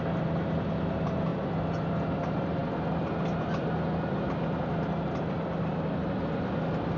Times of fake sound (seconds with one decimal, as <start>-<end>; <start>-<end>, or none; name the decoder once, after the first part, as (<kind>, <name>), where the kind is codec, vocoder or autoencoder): none